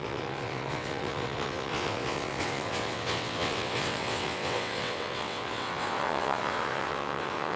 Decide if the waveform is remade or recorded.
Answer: remade